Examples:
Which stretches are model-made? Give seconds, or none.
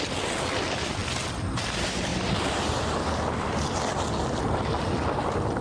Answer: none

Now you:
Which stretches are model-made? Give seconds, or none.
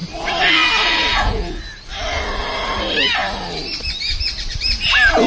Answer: 1.1-1.6 (vocoder, Vocos)